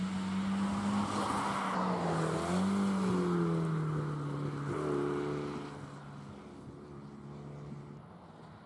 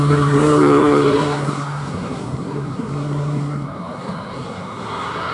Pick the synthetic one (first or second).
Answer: second